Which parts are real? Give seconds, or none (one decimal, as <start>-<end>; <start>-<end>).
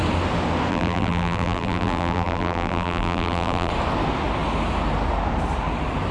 0.0-0.7; 3.7-6.1